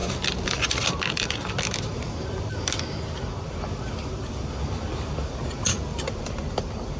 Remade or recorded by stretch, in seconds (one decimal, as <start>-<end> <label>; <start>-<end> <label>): 0.0-2.5 remade; 2.5-5.9 recorded; 5.9-7.0 remade